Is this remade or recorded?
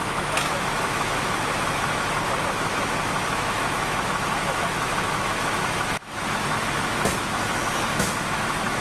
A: remade